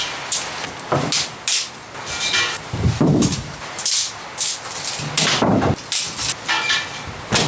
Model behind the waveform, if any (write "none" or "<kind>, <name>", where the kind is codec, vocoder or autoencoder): none